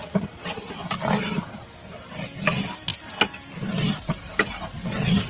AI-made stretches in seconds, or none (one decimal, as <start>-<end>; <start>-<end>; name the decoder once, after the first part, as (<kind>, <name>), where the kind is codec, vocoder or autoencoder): none